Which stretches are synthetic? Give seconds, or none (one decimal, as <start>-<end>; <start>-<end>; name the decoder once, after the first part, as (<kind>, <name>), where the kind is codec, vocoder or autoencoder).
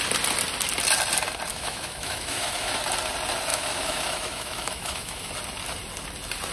1.5-2.8 (autoencoder, DAC-VAE); 3.5-5.3